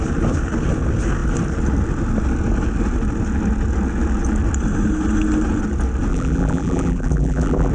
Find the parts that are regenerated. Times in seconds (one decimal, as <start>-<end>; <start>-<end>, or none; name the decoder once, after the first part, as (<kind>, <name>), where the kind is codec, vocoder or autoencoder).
6.1-7.7 (vocoder, BigVGAN v2)